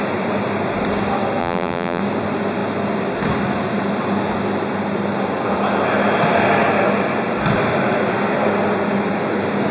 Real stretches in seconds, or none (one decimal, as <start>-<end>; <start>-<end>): 0.0-1.4; 2.0-9.7